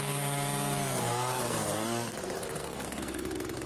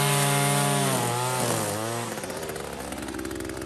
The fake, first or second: first